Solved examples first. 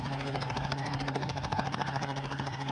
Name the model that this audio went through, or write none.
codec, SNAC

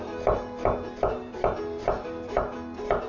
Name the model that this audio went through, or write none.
none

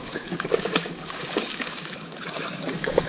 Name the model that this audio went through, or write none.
codec, DAC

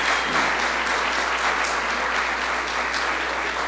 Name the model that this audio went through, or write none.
none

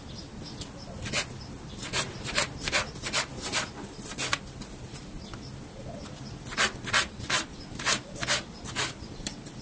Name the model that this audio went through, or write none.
none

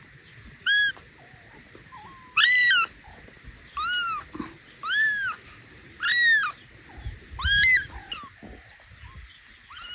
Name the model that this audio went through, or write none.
none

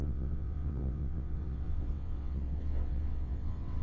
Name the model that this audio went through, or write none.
vocoder, WaveNeXt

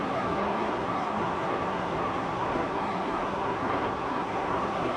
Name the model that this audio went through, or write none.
codec, SNAC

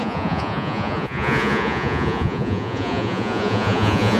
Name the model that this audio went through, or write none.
vocoder, Vocos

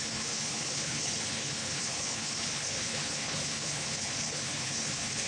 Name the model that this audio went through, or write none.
codec, HILCodec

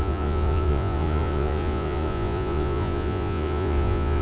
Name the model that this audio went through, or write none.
vocoder, Vocos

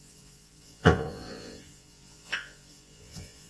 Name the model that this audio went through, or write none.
vocoder, Vocos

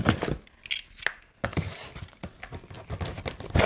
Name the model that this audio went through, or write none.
none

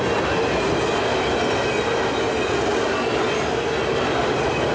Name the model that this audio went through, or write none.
none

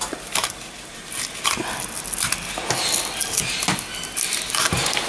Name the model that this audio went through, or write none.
none